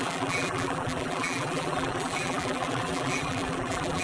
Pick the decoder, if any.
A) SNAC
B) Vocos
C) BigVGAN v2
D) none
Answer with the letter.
C